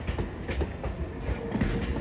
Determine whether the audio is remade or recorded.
recorded